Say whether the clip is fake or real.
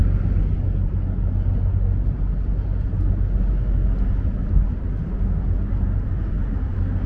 real